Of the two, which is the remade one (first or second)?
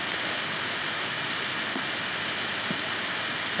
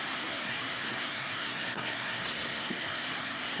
second